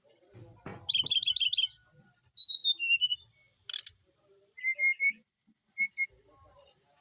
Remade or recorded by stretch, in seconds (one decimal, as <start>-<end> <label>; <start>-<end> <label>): 0.0-7.0 recorded